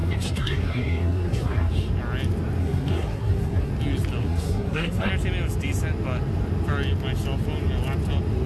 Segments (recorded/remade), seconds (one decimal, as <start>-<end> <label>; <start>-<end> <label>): 0.0-1.7 remade; 1.7-2.6 recorded; 2.6-3.7 remade; 3.7-4.2 recorded; 4.2-5.1 remade; 5.1-8.5 recorded